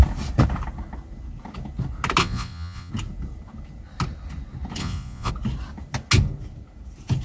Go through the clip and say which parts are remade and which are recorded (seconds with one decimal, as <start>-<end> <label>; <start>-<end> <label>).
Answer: 0.0-2.2 recorded; 2.2-2.9 remade; 2.9-4.8 recorded; 4.8-5.3 remade; 5.3-7.2 recorded

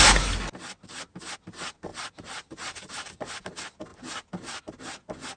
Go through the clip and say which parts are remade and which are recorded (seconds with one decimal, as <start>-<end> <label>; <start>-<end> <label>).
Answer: 0.0-1.9 recorded; 1.9-3.4 remade; 3.4-5.4 recorded

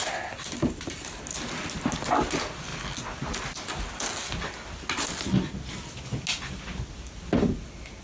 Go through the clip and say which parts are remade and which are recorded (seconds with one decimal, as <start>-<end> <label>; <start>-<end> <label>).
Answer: 0.0-8.0 recorded

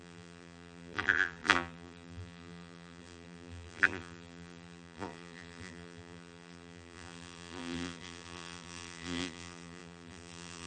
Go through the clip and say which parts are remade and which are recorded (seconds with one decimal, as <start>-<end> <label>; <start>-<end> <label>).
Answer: 0.0-10.7 remade

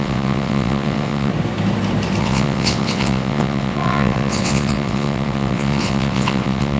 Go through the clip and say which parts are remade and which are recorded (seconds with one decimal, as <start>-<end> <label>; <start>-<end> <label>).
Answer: 0.0-1.3 remade; 1.3-2.2 recorded; 2.2-6.8 remade

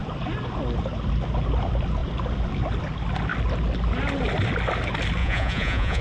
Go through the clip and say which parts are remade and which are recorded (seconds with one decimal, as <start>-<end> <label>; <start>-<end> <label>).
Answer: 0.0-5.2 recorded; 5.2-6.0 remade

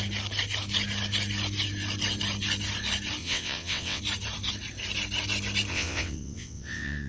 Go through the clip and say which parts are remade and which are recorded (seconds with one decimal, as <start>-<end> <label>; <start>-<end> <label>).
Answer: 0.0-3.2 recorded; 3.2-4.0 remade; 4.0-5.7 recorded; 5.7-7.1 remade